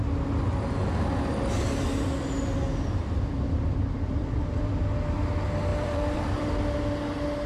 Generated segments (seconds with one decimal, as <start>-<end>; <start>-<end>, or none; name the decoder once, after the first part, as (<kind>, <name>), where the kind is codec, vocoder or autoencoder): 2.7-4.8 (vocoder, BigVGAN v2); 5.7-6.5